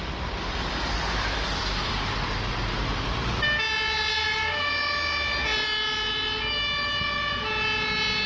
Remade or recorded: recorded